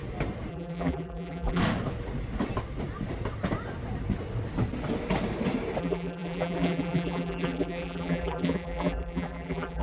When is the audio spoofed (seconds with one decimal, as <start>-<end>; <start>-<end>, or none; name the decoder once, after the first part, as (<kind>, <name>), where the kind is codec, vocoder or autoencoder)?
0.5-1.6 (vocoder, BigVGAN v2); 5.8-9.8

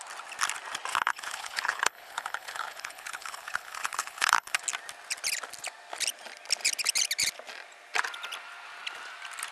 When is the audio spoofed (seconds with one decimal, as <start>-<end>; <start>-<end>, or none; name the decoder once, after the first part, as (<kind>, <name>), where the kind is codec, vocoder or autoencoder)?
0.9-4.6 (codec, HILCodec)